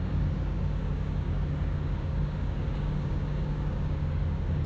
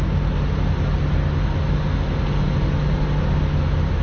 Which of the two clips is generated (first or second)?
first